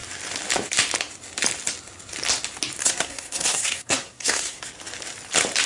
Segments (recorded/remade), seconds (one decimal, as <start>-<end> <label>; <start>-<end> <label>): 0.0-2.8 recorded; 2.8-4.6 remade; 4.6-5.7 recorded